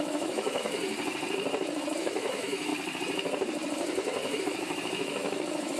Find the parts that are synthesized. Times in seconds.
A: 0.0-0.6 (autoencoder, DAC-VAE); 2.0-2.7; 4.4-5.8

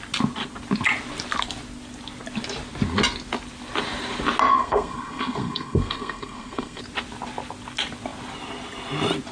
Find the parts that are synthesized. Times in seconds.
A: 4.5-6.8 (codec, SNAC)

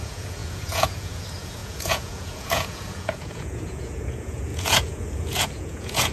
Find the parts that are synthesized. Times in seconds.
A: 0.0-6.1 (vocoder, Vocos)

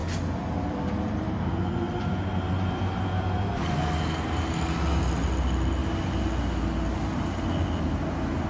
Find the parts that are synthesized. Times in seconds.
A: 0.0-1.1 (vocoder, BigVGAN v2)